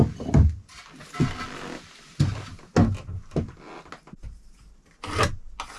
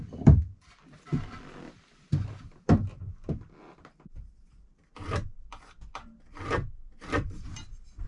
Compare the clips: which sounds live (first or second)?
first